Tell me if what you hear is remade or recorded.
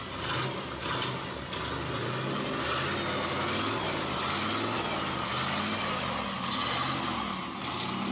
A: recorded